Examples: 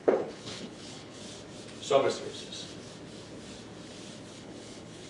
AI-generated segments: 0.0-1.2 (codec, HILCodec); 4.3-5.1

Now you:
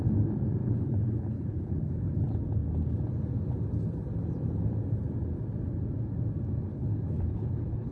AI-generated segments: 0.6-2.1 (codec, HILCodec); 6.7-7.9

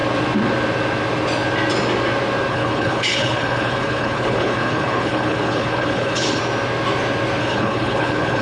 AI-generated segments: 2.5-6.4 (codec, HILCodec); 7.4-8.4

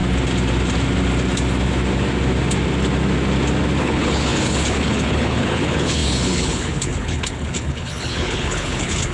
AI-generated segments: 3.8-9.1 (codec, HILCodec)

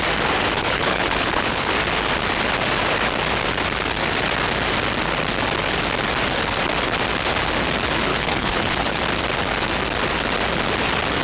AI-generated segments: 0.6-1.7 (codec, HILCodec); 8.1-9.0